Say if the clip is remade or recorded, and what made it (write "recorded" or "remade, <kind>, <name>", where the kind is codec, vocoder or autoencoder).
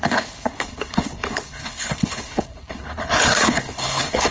remade, codec, HILCodec